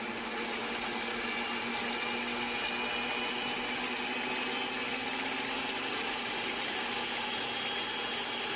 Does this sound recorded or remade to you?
recorded